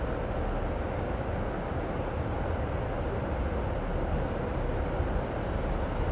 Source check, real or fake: real